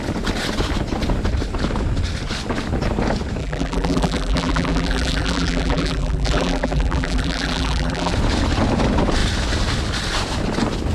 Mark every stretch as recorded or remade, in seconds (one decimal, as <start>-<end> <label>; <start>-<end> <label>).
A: 0.0-3.4 recorded; 3.4-8.1 remade; 8.1-10.9 recorded